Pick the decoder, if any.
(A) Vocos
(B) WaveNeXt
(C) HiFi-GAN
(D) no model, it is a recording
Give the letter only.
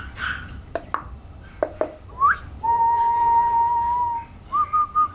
D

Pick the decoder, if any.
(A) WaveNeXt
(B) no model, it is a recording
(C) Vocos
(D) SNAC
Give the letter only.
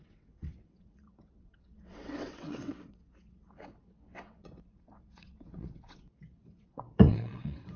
A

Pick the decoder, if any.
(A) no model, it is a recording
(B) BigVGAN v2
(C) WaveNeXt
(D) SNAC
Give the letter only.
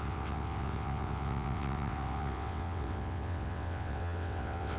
C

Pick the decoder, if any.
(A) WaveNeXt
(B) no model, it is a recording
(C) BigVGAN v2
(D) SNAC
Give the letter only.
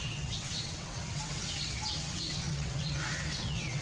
A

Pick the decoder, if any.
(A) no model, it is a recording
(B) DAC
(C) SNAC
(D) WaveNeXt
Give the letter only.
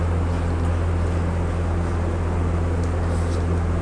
A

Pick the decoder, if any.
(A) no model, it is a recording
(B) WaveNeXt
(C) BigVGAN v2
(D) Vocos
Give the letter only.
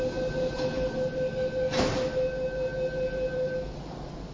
A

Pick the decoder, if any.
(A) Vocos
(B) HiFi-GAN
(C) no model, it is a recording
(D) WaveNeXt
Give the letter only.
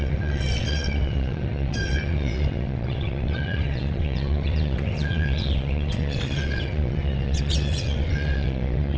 D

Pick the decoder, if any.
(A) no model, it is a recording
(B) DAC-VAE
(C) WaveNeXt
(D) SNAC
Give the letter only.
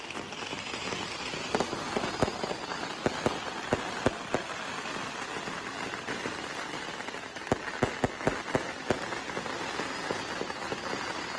A